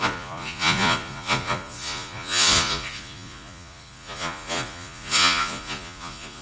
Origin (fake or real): fake